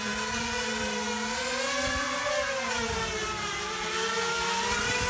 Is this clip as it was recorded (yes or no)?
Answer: no